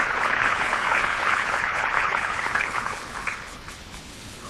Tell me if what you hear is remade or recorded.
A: remade